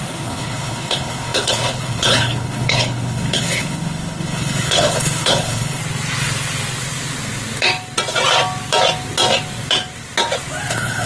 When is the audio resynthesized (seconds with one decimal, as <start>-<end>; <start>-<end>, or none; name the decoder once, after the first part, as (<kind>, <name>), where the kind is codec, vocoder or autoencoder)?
0.0-5.8 (codec, HILCodec); 10.7-11.1